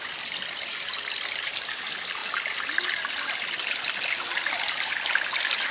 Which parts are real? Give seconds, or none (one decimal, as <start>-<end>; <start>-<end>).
0.0-5.7